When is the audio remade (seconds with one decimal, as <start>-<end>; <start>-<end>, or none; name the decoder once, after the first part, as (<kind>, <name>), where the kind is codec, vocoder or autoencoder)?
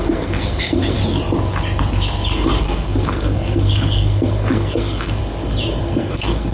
0.0-1.0 (codec, SNAC); 2.6-5.2; 5.8-6.5